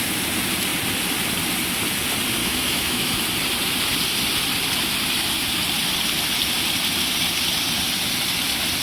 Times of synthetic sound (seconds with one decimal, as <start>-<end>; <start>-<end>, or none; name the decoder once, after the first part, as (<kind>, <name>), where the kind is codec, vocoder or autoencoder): 2.4-3.2 (autoencoder, DAC-VAE)